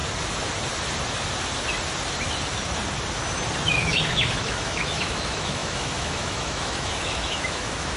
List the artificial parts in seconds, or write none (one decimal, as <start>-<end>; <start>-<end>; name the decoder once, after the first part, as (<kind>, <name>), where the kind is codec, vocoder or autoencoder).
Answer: 3.7-8.0 (autoencoder, DAC-VAE)